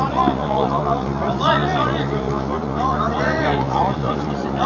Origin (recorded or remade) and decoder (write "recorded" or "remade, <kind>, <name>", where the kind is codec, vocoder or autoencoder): remade, vocoder, Vocos